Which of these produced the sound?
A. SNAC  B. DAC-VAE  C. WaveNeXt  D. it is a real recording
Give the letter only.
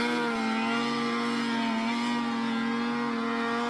D